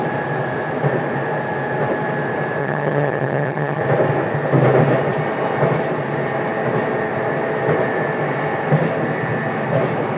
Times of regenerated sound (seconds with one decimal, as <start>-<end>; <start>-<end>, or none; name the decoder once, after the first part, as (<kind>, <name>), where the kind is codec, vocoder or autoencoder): 2.6-3.8 (vocoder, HiFi-GAN)